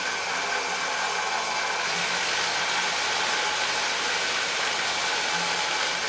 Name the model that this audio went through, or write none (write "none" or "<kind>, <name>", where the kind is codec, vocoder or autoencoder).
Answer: none